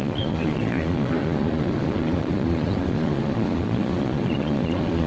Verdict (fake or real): fake